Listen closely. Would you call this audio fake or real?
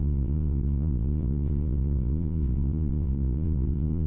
fake